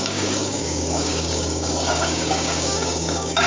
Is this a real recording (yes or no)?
no